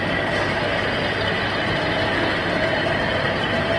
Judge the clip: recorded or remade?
recorded